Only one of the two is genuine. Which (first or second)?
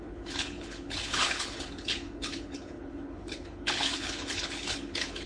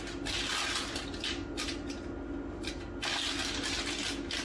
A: second